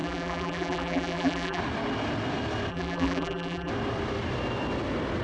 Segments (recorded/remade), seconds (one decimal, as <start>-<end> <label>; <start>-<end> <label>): 0.0-1.6 remade; 1.6-2.7 recorded; 2.7-3.7 remade; 3.7-5.2 recorded